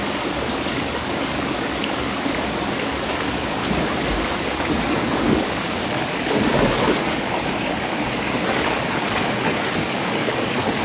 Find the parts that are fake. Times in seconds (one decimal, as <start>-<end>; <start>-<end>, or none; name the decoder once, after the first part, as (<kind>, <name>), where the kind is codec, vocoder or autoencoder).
0.0-3.6 (codec, DAC); 4.4-10.8